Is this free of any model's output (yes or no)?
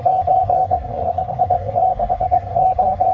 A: no